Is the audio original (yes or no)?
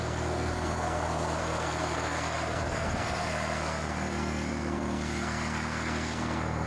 no